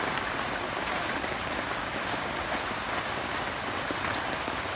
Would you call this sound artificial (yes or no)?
no